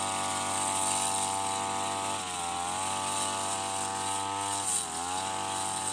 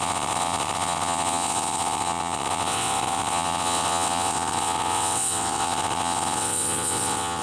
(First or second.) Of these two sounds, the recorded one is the first